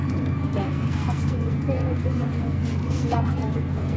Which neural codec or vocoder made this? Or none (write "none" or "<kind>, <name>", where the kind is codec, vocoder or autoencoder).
codec, SNAC